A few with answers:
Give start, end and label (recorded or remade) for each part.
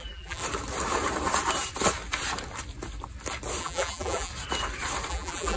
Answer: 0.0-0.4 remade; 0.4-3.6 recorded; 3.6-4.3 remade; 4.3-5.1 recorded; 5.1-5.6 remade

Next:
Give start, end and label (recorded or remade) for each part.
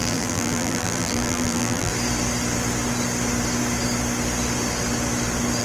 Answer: 0.0-1.9 remade; 1.9-5.6 recorded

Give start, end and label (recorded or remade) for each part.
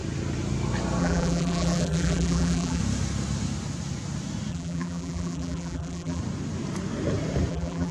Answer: 0.0-1.0 recorded; 1.0-2.8 remade; 2.8-4.5 recorded; 4.5-6.2 remade; 6.2-7.5 recorded; 7.5-7.9 remade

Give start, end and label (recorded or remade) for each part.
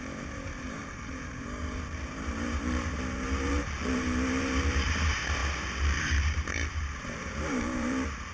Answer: 0.0-8.3 remade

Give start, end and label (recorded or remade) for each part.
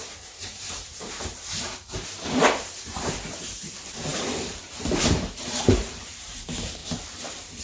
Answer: 0.0-6.8 remade; 6.8-7.6 recorded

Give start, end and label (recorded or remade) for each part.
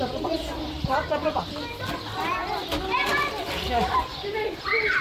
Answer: 0.0-1.2 recorded; 1.2-1.8 remade; 1.8-3.1 recorded; 3.1-5.0 remade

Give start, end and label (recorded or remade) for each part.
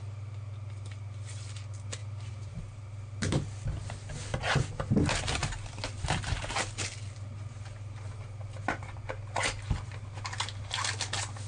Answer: 0.0-2.0 recorded; 2.0-2.6 remade; 2.6-5.4 recorded; 5.4-6.2 remade; 6.2-11.5 recorded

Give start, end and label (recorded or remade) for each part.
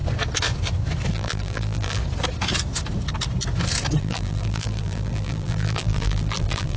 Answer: 0.0-1.1 recorded; 1.1-2.0 remade; 2.0-4.0 recorded; 4.0-6.8 remade